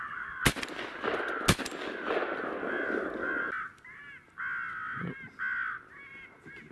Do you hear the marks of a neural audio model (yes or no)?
no